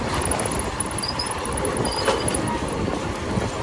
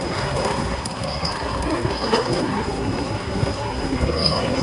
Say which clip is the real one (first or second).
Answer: first